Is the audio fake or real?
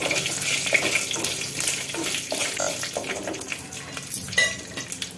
real